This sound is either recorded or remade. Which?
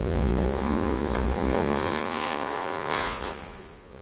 remade